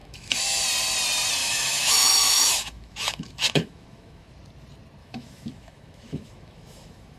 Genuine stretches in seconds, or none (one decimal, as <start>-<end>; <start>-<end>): 0.6-1.4; 4.3-5.0